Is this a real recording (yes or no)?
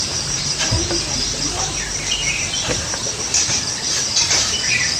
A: no